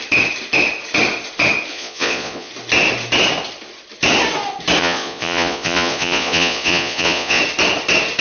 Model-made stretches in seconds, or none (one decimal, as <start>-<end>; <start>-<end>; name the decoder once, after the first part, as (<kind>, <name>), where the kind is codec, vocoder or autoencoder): 1.7-2.5 (vocoder, Vocos); 4.8-7.4